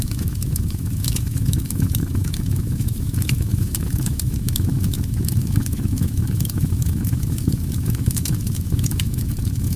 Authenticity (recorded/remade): remade